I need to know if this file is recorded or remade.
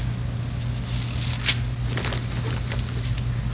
recorded